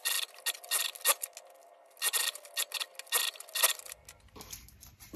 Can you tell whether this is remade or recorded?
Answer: recorded